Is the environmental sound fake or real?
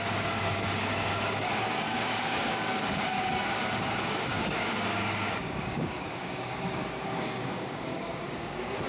fake